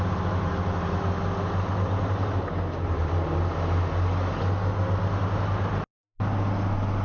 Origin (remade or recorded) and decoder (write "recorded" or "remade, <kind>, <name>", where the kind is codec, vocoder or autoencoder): recorded